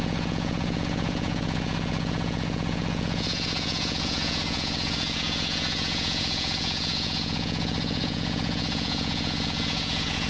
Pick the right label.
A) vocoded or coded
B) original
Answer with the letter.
A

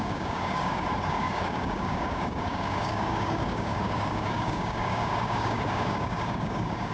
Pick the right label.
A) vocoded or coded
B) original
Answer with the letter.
A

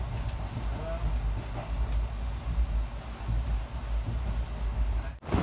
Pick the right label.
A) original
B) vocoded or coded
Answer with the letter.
A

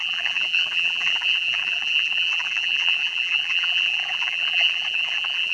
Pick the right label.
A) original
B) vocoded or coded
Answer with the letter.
B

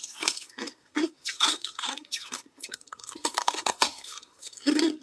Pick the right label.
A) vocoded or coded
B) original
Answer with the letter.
A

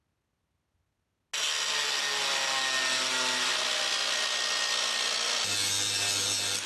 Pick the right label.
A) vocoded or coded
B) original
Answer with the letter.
B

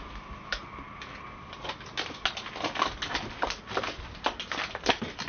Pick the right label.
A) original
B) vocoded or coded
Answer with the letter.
A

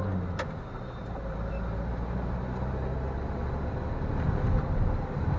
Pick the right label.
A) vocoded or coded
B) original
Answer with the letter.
B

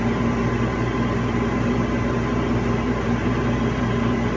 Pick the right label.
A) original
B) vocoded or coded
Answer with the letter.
A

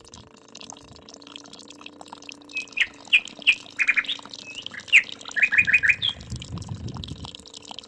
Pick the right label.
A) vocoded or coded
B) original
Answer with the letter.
B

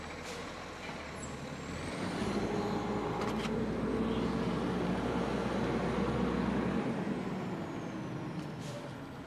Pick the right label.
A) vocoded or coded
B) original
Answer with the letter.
B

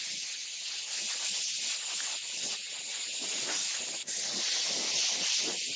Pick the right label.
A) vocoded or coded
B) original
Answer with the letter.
B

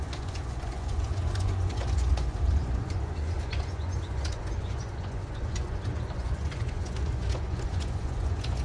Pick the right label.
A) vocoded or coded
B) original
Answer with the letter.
A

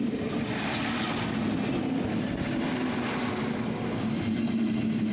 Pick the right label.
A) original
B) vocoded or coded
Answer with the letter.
A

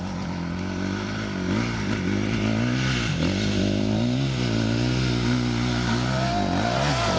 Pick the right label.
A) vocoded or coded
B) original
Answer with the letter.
B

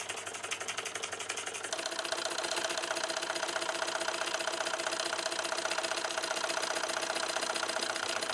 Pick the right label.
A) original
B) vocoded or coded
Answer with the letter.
A